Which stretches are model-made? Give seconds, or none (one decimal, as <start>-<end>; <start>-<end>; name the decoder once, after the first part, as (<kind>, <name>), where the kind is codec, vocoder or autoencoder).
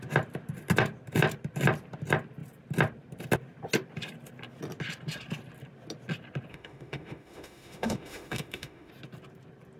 6.5-8.9 (autoencoder, DAC-VAE)